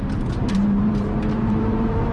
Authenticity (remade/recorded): remade